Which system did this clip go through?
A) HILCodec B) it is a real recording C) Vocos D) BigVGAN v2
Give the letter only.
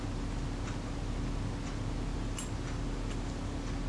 B